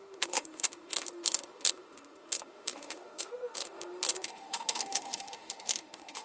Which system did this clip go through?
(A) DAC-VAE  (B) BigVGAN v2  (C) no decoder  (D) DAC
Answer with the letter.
A